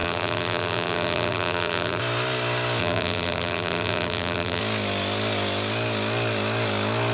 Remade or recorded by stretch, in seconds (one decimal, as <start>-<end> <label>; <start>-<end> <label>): 0.0-2.0 remade; 2.0-2.8 recorded; 2.8-4.6 remade; 4.6-7.1 recorded